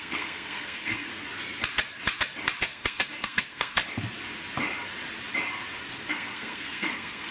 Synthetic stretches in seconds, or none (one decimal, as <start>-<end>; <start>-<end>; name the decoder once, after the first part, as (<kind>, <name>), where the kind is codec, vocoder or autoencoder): 0.0-1.1 (codec, SNAC); 2.6-3.8; 6.1-7.3